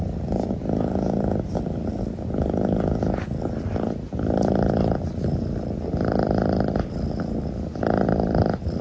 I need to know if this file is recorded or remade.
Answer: recorded